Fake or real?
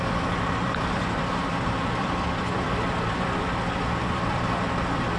fake